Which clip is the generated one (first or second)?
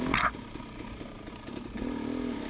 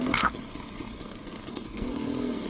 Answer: second